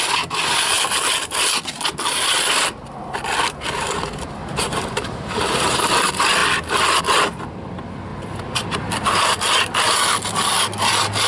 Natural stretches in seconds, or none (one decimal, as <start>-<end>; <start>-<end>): 0.0-4.4; 5.8-8.1; 8.9-11.3